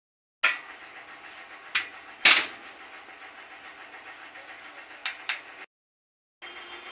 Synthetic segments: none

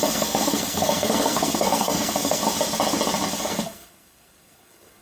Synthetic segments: 0.0-2.4 (codec, SNAC); 3.4-5.0

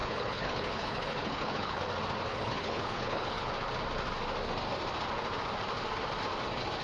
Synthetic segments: 0.0-1.8 (codec, HILCodec); 2.3-3.5